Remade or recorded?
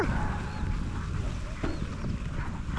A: recorded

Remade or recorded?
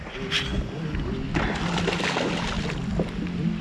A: recorded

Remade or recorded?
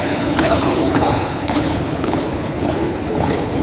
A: remade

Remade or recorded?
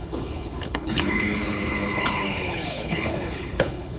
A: remade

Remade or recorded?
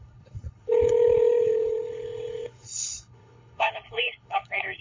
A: remade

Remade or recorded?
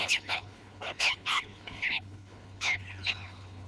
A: remade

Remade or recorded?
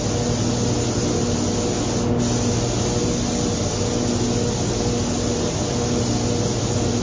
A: recorded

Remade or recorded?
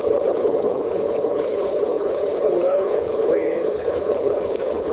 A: remade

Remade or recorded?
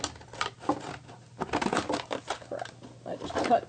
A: recorded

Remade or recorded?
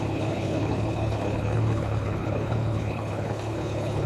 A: remade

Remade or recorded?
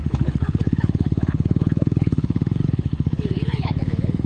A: remade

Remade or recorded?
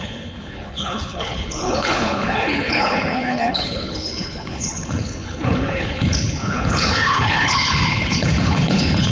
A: remade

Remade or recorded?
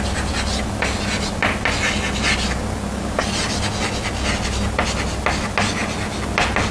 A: recorded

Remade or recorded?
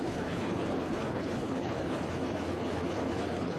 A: remade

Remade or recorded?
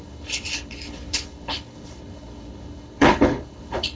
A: remade